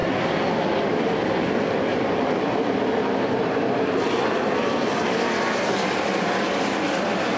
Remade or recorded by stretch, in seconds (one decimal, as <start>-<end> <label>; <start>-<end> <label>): 0.0-7.4 remade